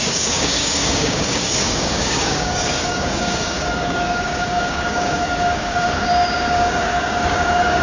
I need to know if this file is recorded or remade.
remade